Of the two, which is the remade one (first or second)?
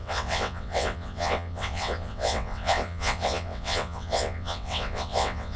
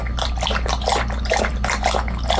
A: first